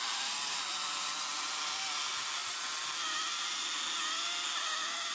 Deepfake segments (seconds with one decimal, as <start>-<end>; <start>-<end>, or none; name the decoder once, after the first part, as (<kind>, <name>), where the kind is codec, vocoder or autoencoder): none